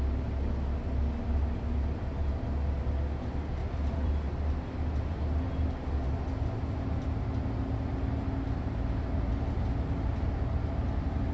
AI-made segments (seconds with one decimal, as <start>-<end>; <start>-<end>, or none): 3.6-4.1